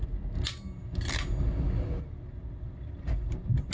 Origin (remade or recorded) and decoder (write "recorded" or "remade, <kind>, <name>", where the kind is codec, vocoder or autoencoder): recorded